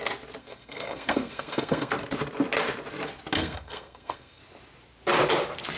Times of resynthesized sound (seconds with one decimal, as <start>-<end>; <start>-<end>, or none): 0.4-1.9; 3.4-4.4